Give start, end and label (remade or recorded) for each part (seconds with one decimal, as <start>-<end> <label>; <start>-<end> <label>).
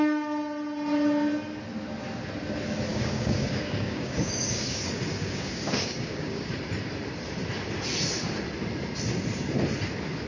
0.0-2.9 recorded; 2.9-6.5 remade; 6.5-10.3 recorded